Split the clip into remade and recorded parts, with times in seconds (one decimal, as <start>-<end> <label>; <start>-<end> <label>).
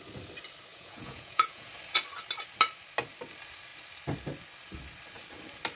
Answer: 0.0-0.7 recorded; 0.7-1.7 remade; 1.7-5.8 recorded